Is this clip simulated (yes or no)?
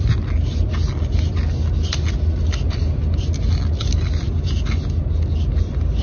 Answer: no